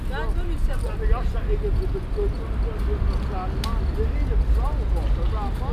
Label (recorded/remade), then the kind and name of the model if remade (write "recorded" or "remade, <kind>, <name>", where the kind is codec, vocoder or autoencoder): recorded